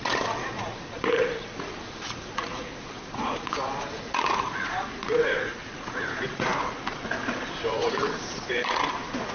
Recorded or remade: remade